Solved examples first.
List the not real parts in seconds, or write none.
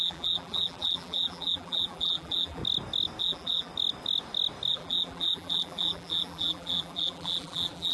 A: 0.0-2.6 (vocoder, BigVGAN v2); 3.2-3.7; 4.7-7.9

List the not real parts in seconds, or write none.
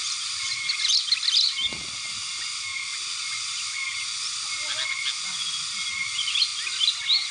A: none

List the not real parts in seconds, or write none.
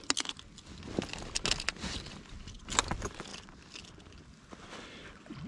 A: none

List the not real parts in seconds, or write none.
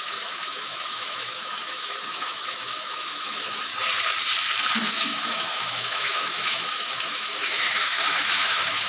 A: 0.0-3.7 (autoencoder, DAC-VAE); 4.9-8.9